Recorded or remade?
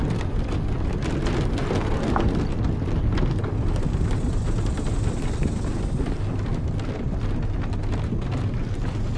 recorded